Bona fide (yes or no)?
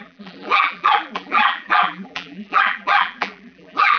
no